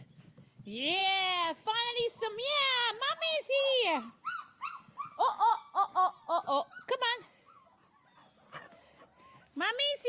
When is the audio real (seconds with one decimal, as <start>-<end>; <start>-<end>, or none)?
0.0-10.1